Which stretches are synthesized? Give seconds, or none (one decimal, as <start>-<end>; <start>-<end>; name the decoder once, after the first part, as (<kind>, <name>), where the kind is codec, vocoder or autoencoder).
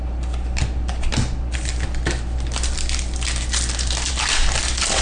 none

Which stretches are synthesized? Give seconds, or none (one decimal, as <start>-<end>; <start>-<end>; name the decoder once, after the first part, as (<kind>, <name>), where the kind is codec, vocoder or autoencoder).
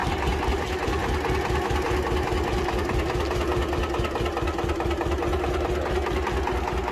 0.0-0.5 (vocoder, BigVGAN v2)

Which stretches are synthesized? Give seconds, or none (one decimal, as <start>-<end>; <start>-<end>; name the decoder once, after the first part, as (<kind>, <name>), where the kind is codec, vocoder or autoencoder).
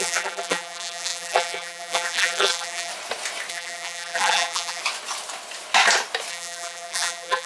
0.0-2.9 (vocoder, BigVGAN v2); 3.5-4.8; 6.3-7.5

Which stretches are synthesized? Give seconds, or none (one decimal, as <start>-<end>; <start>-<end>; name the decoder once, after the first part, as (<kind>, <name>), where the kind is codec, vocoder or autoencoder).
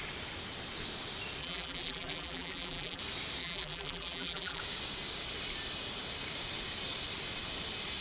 1.4-3.0 (vocoder, BigVGAN v2); 3.4-4.6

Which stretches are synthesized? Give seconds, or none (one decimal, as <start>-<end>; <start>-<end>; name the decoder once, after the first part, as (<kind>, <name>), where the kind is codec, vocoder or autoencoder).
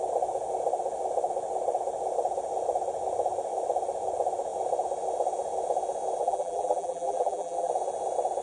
6.2-7.7 (vocoder, BigVGAN v2)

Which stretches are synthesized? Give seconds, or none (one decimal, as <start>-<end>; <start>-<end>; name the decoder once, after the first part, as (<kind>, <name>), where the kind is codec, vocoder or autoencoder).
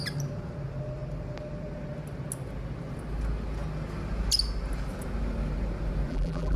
6.1-6.6 (vocoder, BigVGAN v2)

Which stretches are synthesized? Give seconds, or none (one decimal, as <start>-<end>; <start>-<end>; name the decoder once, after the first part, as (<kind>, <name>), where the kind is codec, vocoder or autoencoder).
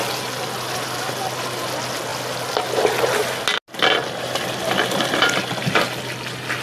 none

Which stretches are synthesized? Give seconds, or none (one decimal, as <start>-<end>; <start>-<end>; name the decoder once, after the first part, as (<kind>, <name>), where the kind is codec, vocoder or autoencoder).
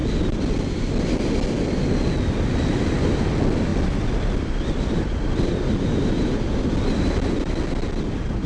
3.7-6.4 (vocoder, BigVGAN v2)